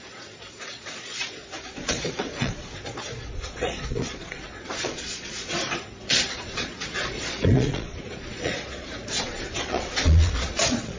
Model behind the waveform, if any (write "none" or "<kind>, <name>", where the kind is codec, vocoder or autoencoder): vocoder, Vocos